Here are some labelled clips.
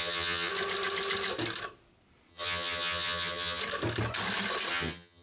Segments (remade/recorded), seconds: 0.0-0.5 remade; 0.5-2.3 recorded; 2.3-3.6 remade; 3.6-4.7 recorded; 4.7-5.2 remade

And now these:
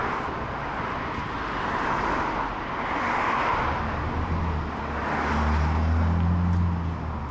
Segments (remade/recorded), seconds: 0.0-7.3 recorded

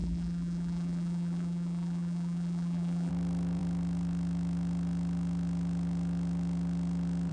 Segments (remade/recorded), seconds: 0.0-3.1 remade; 3.1-7.3 recorded

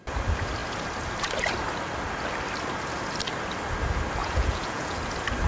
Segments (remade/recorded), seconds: 0.0-4.2 recorded; 4.2-5.0 remade; 5.0-5.5 recorded

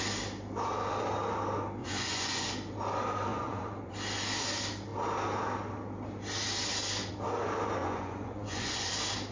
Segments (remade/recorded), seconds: 0.0-1.8 recorded; 1.8-2.5 remade; 2.5-3.3 recorded; 3.3-3.9 remade; 3.9-7.8 recorded; 7.8-8.9 remade; 8.9-9.3 recorded